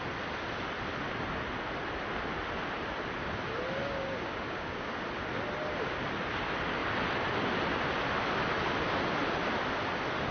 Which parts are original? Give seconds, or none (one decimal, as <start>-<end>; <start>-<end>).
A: 0.0-3.8; 4.9-10.3